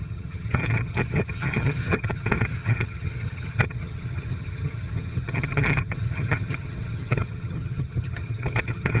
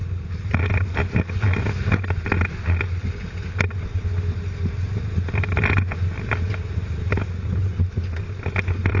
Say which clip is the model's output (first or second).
first